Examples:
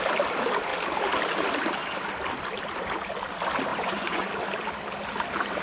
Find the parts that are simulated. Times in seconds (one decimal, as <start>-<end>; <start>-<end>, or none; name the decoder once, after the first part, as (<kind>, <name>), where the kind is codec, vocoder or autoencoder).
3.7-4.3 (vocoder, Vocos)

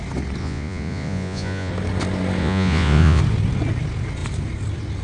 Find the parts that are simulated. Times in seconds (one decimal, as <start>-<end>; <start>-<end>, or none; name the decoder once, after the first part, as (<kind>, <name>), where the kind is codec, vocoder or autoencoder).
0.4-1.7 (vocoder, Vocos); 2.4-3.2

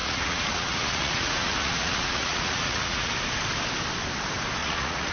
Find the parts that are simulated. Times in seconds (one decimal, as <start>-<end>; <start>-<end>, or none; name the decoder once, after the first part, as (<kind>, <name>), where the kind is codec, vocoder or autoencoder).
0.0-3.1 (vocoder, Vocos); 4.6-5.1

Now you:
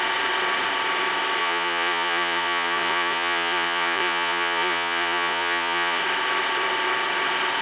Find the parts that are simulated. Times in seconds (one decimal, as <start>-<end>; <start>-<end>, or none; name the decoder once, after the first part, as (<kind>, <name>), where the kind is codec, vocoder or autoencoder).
1.4-6.0 (vocoder, Vocos)

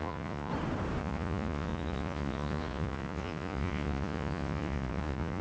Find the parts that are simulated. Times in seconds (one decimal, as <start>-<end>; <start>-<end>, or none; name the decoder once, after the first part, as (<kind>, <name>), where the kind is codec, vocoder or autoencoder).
0.0-0.5 (vocoder, Vocos); 1.0-5.4

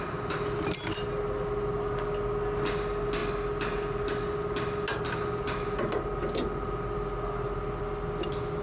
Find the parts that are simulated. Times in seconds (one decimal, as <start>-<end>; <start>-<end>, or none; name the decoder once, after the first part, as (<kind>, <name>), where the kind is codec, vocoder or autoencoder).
none